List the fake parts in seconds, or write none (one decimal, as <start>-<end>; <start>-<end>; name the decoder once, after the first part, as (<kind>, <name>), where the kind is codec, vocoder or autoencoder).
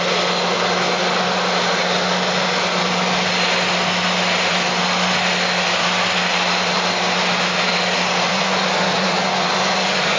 8.3-10.2 (vocoder, Vocos)